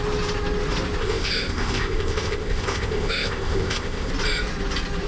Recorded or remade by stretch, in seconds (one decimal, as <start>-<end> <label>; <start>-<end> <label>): 0.0-1.0 recorded; 1.0-4.1 remade; 4.1-5.1 recorded